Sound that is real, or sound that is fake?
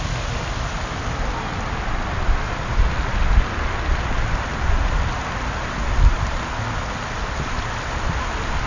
real